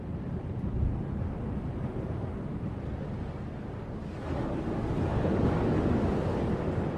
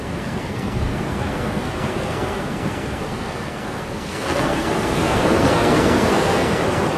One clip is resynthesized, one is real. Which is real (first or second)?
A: first